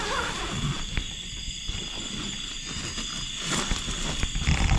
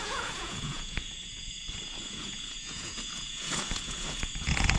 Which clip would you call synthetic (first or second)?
second